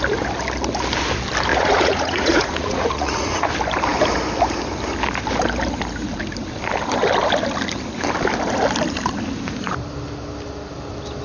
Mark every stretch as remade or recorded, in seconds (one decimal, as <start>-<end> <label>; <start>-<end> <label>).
0.0-1.5 recorded; 1.5-3.5 remade; 3.5-11.2 recorded